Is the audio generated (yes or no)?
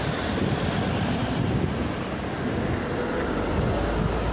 no